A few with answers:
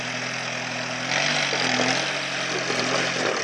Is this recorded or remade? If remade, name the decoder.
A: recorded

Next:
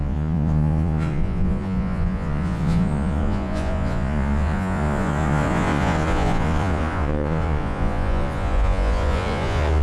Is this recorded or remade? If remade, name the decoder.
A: remade, vocoder, Vocos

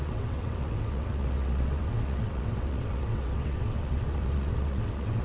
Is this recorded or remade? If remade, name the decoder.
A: remade, vocoder, WaveNeXt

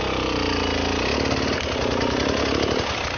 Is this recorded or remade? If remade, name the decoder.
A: recorded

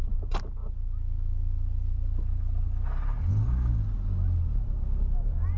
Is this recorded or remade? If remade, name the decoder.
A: recorded